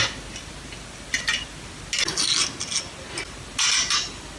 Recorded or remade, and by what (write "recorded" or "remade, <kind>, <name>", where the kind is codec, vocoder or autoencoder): recorded